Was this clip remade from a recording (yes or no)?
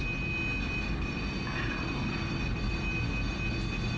no